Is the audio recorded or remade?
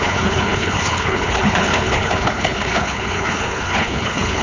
remade